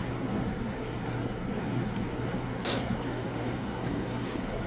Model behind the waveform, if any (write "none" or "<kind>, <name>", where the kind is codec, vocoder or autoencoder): codec, SNAC